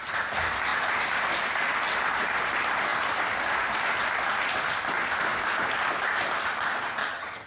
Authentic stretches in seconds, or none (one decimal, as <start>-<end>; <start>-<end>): 0.0-7.0